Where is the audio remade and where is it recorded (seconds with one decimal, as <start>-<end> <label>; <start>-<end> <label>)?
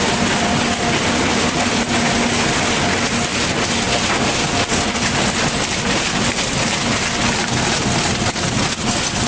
0.0-9.3 recorded